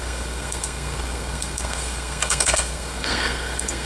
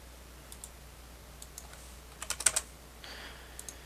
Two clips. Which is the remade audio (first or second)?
first